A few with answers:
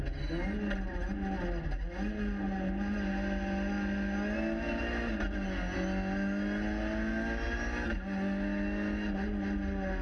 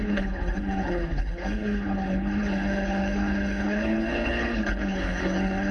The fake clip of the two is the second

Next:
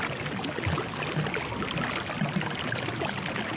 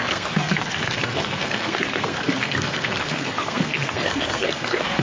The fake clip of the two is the second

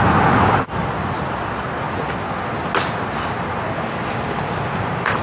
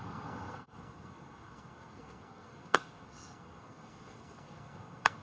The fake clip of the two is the second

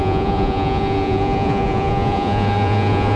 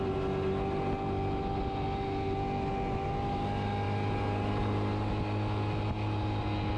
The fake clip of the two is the first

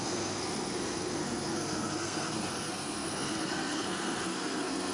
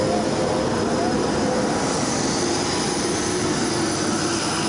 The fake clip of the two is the first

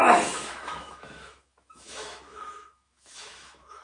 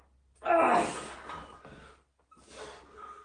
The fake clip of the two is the first